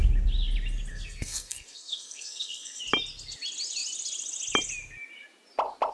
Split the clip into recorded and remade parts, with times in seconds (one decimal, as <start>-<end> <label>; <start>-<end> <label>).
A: 0.0-0.9 recorded; 0.9-2.8 remade; 2.8-5.9 recorded